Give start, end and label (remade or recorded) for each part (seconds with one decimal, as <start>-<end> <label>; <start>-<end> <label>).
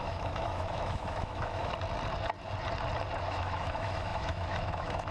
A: 0.0-1.7 remade; 1.7-3.2 recorded; 3.2-5.1 remade